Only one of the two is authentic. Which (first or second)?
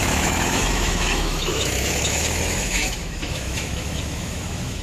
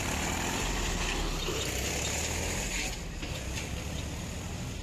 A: second